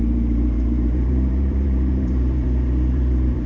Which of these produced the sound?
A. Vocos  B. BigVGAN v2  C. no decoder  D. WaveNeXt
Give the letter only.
B